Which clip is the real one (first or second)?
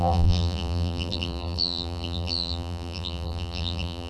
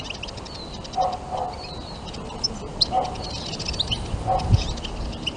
second